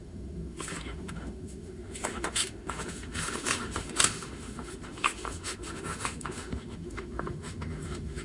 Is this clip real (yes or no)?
no